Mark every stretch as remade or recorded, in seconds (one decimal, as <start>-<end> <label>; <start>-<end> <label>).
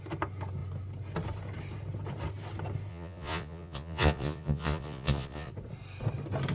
0.0-2.9 recorded; 2.9-5.5 remade; 5.5-6.5 recorded